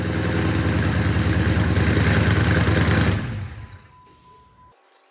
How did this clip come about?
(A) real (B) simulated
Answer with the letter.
A